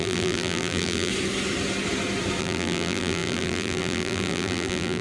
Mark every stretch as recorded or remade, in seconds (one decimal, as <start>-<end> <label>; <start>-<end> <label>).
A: 0.0-1.1 remade; 1.1-2.4 recorded; 2.4-5.0 remade